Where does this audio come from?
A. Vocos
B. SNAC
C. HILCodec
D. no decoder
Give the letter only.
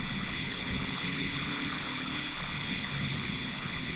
C